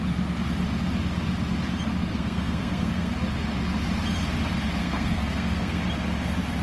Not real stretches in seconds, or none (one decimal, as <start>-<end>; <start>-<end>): 2.1-3.1; 4.8-5.8